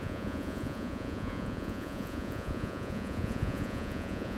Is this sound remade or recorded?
remade